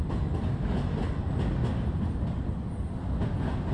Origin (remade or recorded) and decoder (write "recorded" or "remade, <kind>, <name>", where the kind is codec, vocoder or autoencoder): recorded